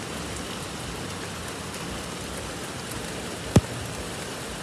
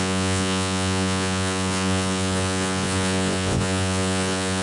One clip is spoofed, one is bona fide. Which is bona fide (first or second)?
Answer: first